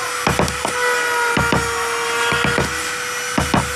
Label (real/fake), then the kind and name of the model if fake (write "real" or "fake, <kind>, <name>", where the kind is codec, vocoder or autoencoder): real